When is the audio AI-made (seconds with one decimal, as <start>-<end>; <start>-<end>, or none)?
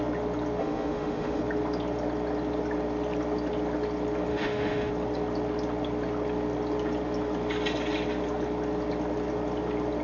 0.6-1.4; 4.3-4.9